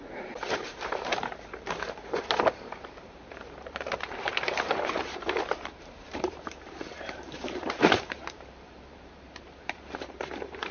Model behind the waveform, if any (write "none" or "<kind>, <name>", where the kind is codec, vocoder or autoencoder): vocoder, BigVGAN v2